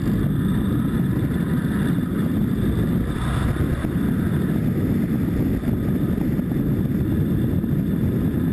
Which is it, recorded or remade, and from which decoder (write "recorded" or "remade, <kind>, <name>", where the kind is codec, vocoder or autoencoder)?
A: recorded